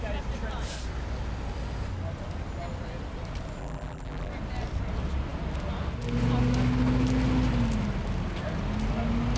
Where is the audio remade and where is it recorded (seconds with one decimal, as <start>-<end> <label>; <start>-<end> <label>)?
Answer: 0.0-3.6 recorded; 3.6-4.3 remade; 4.3-9.4 recorded

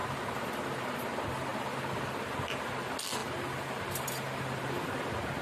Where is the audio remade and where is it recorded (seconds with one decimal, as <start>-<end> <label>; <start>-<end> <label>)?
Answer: 0.0-5.4 recorded

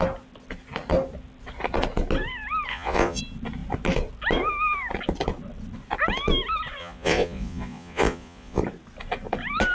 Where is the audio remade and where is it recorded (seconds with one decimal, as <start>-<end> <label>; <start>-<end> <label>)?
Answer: 0.0-2.7 recorded; 2.7-3.2 remade; 3.2-6.8 recorded; 6.8-8.6 remade; 8.6-9.7 recorded

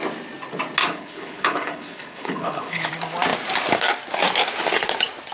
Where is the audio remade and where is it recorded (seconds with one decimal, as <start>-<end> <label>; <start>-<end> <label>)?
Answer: 0.0-0.8 recorded; 0.8-2.9 remade; 2.9-5.3 recorded

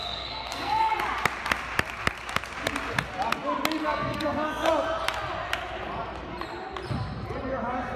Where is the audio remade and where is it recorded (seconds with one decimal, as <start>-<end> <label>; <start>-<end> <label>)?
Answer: 0.0-1.0 remade; 1.0-3.8 recorded; 3.8-4.7 remade; 4.7-8.0 recorded

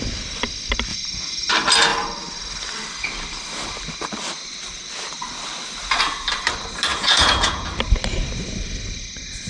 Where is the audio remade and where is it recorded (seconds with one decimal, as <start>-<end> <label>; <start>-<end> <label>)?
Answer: 0.0-0.9 recorded; 0.9-1.5 remade; 1.5-6.9 recorded; 6.9-7.7 remade; 7.7-9.5 recorded